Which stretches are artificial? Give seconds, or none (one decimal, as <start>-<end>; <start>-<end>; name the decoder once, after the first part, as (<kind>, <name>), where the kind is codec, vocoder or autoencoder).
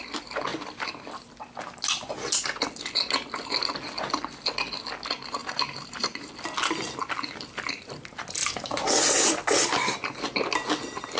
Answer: 5.4-6.3 (vocoder, BigVGAN v2)